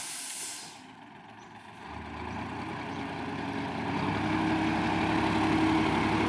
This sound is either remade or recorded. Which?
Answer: recorded